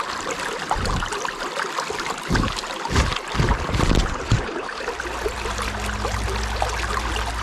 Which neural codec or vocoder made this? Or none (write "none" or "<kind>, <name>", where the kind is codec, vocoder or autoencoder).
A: none